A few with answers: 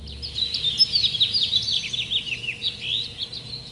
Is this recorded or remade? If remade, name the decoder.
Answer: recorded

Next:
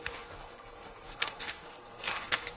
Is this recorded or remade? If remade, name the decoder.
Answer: remade, codec, SNAC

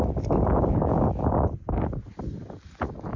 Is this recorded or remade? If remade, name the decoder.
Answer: recorded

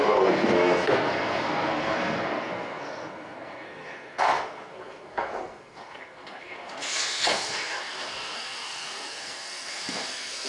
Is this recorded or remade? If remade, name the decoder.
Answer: remade, codec, SNAC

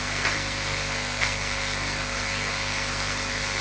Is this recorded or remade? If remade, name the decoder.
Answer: remade, codec, SNAC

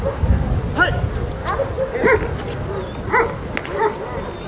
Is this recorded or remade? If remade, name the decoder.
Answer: recorded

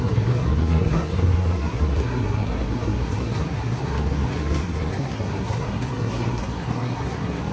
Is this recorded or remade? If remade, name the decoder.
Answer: remade, codec, SNAC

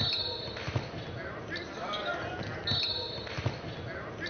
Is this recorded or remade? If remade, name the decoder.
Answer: recorded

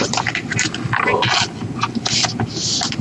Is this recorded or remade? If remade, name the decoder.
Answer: recorded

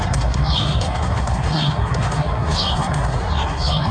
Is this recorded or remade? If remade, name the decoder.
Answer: remade, codec, SNAC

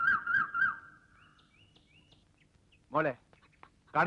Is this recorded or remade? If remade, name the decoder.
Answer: recorded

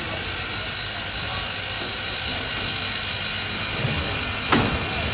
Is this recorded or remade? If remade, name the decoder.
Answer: recorded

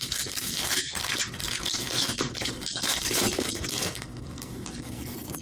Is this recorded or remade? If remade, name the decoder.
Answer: remade, codec, SNAC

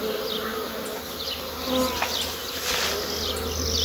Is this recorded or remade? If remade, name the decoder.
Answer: recorded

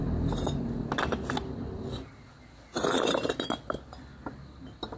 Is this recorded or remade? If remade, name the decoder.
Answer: recorded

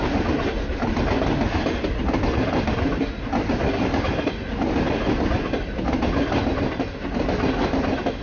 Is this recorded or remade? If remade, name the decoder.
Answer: recorded